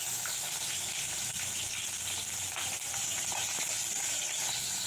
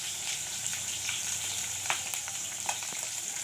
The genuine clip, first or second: first